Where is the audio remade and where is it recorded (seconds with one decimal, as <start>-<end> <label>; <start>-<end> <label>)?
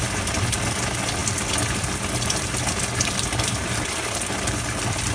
0.0-5.1 recorded